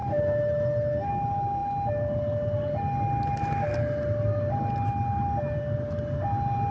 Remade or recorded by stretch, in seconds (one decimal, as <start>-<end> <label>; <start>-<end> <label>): 0.0-1.1 remade; 1.1-6.7 recorded